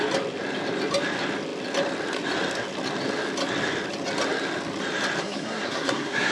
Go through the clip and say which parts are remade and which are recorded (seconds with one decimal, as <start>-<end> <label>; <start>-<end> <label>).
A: 0.0-5.2 recorded; 5.2-6.3 remade